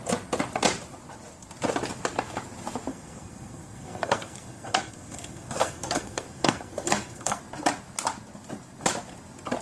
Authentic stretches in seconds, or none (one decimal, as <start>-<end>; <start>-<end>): 0.0-2.9; 7.4-9.6